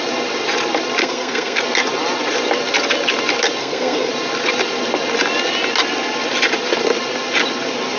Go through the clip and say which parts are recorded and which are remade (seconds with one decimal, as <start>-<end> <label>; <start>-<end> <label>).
0.0-1.0 recorded; 1.0-1.6 remade; 1.6-3.6 recorded; 3.6-4.1 remade; 4.1-8.0 recorded